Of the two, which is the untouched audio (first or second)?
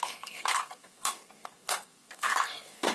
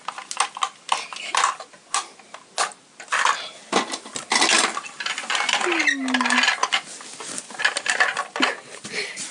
second